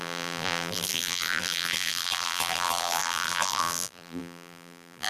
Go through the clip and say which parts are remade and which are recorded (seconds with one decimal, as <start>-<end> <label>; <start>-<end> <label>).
0.0-5.1 remade